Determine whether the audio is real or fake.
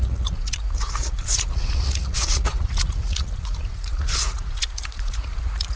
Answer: fake